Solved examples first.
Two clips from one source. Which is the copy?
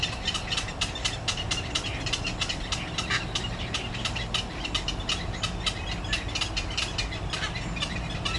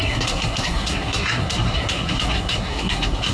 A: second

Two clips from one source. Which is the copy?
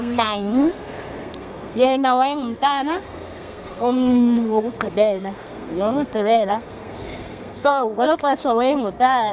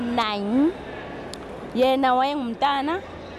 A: first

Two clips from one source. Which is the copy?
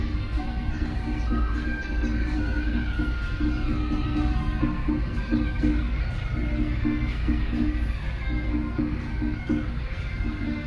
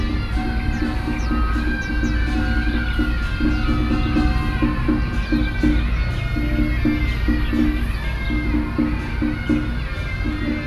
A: first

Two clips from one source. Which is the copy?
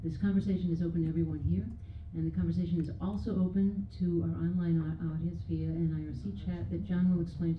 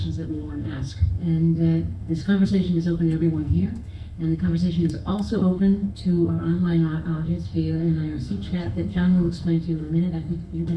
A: second